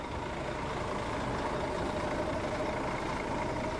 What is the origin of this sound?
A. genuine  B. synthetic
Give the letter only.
A